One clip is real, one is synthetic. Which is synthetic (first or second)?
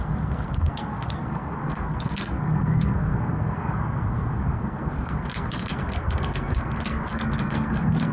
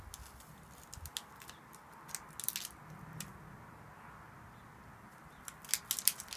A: first